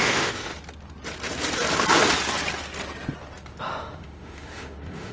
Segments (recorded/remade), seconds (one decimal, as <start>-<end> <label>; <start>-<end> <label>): 0.0-0.5 remade; 0.5-3.6 recorded; 3.6-5.1 remade